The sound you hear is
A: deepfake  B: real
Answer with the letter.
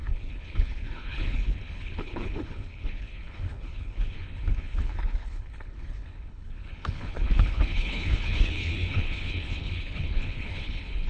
A